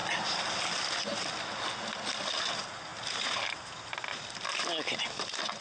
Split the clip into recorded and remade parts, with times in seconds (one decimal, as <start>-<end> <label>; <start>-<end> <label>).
0.0-5.6 recorded